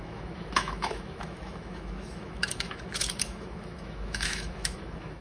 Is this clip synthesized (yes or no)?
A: yes